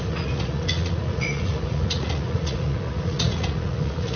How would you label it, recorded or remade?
remade